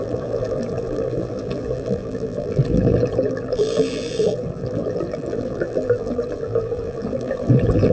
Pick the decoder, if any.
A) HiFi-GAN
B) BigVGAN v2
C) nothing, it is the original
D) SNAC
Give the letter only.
B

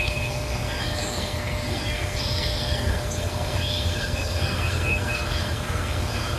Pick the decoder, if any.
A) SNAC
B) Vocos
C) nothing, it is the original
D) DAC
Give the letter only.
A